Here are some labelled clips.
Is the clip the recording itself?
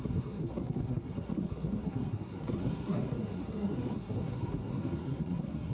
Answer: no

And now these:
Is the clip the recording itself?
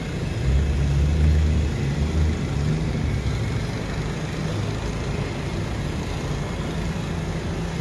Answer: yes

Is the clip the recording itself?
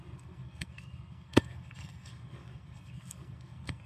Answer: no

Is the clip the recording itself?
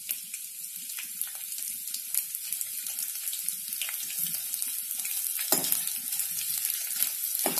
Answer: yes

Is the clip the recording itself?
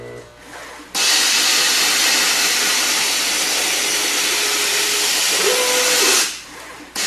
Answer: yes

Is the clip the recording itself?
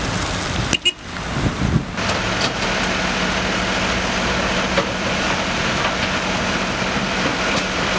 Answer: yes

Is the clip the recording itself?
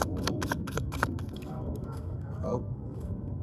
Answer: no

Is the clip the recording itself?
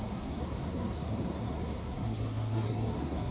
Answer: no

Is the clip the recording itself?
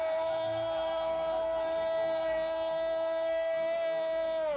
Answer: no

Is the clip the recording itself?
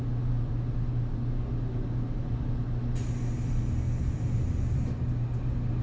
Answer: yes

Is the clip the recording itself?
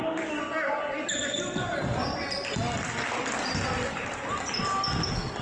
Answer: yes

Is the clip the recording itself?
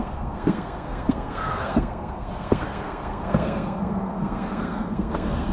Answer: no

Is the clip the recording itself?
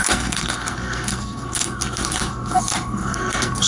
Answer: no